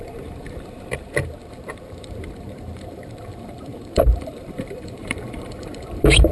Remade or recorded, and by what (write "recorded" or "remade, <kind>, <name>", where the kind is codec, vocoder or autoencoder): remade, vocoder, BigVGAN v2